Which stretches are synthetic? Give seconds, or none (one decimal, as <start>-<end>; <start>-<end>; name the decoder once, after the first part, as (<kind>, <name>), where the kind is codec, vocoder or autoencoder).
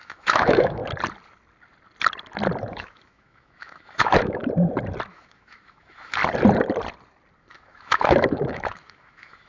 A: 0.0-0.8 (autoencoder, DAC-VAE); 2.7-4.4; 5.1-6.2; 7.5-9.5